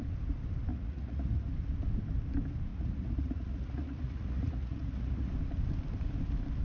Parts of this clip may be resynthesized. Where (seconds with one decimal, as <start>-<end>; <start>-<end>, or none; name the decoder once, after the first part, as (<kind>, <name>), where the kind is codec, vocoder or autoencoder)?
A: 0.7-1.4 (vocoder, Vocos); 2.7-5.3